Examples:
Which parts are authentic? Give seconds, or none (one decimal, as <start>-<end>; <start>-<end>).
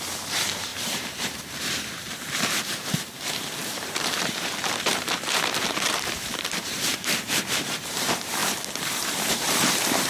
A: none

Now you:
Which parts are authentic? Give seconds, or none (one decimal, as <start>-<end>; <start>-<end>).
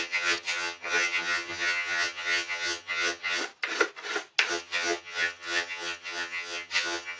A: 3.4-4.5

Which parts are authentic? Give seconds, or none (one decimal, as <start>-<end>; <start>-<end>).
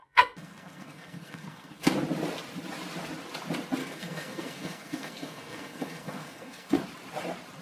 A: 1.9-3.8; 6.8-7.6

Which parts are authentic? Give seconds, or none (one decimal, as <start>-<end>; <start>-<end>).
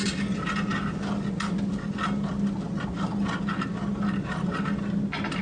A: 0.0-5.4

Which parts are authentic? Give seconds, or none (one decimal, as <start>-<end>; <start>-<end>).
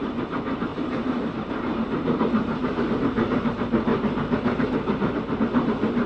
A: 0.0-0.7; 2.9-3.9; 5.4-6.1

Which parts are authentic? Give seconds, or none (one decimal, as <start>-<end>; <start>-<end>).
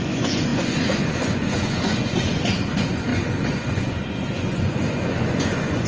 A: none